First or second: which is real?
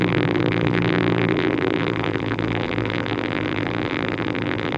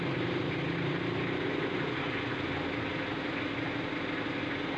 second